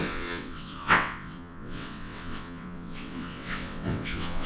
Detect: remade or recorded remade